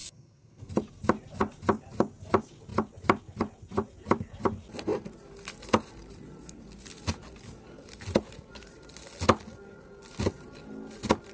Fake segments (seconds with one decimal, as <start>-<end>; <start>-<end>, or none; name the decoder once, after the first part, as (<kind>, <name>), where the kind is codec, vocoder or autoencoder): 0.0-0.7 (codec, SNAC)